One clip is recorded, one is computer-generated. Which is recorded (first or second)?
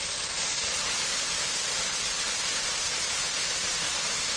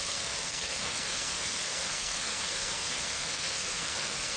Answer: first